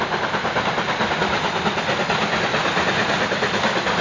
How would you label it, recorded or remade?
recorded